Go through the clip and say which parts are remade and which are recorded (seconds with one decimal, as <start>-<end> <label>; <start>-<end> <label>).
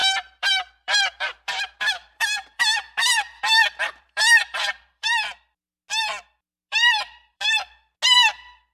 0.0-5.1 remade; 5.1-6.7 recorded; 6.7-7.4 remade; 7.4-8.7 recorded